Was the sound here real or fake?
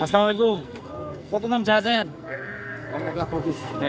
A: fake